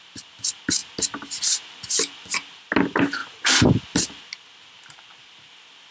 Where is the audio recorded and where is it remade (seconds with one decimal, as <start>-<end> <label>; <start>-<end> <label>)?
0.0-5.9 recorded